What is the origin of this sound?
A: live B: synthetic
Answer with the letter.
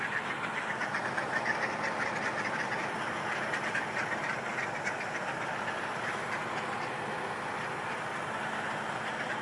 A